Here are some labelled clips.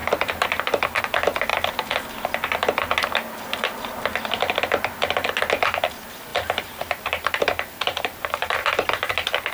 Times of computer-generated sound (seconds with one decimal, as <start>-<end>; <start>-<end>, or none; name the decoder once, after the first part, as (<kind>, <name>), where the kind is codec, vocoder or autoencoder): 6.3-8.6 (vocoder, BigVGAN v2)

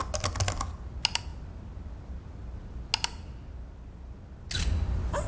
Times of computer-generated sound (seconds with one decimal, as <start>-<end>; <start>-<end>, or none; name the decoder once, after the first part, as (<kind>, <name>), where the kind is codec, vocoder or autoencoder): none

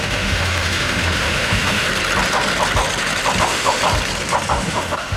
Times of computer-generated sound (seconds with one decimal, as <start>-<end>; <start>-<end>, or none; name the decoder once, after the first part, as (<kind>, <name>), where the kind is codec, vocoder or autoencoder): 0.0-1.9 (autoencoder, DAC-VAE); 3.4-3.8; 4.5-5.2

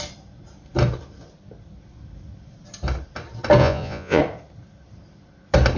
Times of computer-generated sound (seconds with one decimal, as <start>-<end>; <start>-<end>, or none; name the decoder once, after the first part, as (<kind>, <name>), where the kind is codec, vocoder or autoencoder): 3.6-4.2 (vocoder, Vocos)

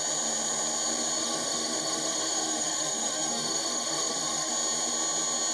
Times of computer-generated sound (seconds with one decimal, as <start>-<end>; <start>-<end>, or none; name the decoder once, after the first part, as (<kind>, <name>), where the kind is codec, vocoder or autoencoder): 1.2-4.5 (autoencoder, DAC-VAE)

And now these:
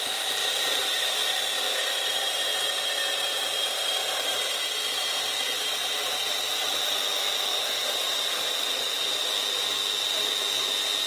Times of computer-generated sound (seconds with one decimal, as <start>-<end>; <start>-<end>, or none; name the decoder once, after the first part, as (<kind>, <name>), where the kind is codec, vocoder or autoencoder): 0.4-1.1 (vocoder, BigVGAN v2); 7.5-9.3

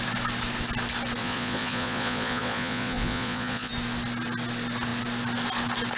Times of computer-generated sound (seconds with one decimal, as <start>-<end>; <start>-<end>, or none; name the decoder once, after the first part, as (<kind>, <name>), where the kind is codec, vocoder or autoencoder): 1.2-3.7 (vocoder, Vocos)